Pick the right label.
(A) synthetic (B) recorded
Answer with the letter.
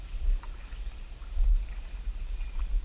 B